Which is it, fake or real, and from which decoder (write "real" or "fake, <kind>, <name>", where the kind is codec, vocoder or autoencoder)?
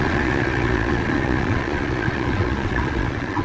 fake, vocoder, Vocos